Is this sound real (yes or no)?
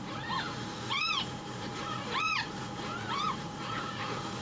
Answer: no